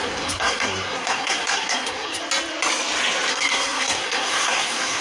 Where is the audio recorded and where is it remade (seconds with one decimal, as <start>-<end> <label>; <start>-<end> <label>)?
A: 0.0-2.2 remade; 2.2-3.3 recorded; 3.3-5.0 remade